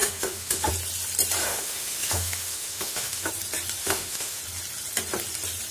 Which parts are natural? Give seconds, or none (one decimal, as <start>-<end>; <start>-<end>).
0.7-1.4; 3.3-3.8; 4.4-5.7